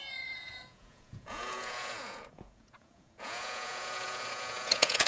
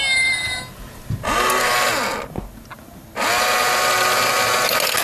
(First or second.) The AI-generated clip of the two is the first